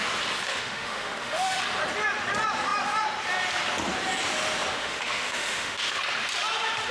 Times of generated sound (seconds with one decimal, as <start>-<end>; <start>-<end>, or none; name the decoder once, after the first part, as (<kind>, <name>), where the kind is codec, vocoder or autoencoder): 0.5-1.6 (autoencoder, DAC-VAE); 4.8-6.0